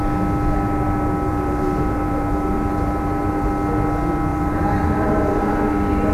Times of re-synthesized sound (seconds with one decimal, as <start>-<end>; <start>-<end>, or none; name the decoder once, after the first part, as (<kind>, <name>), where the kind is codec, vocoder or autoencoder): 1.3-3.5 (vocoder, BigVGAN v2); 4.3-5.5